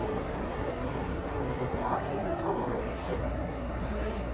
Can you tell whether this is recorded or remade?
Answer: remade